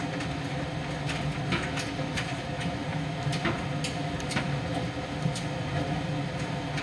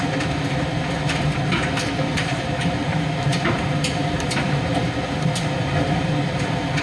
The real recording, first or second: first